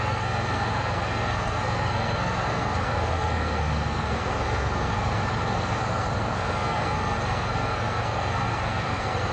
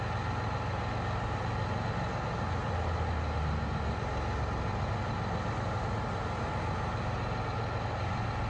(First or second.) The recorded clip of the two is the second